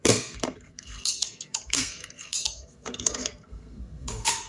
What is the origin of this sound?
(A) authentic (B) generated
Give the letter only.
B